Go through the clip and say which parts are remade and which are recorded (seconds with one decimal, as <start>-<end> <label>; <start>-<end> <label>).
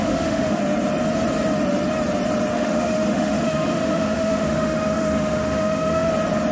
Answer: 0.0-0.6 remade; 0.6-2.5 recorded; 2.5-6.1 remade; 6.1-6.5 recorded